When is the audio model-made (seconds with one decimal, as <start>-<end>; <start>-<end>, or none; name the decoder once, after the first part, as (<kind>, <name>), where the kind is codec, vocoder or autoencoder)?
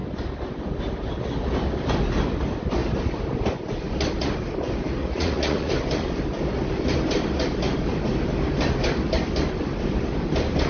5.0-5.7 (vocoder, Vocos)